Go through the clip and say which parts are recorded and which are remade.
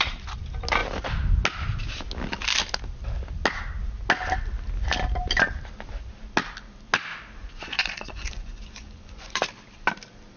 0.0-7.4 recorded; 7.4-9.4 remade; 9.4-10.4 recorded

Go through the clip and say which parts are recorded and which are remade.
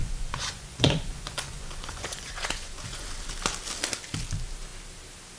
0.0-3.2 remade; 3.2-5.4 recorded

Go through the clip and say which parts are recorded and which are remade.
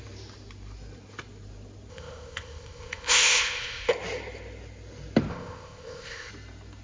0.0-1.9 recorded; 1.9-3.9 remade; 3.9-5.3 recorded; 5.3-6.3 remade; 6.3-6.8 recorded